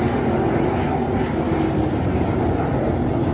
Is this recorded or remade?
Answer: remade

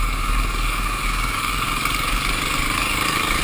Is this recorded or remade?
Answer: remade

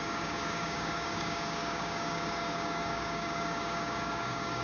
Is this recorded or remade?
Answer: remade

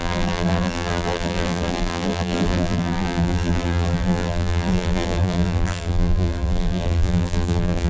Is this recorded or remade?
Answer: remade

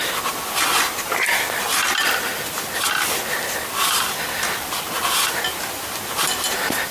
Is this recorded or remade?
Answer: recorded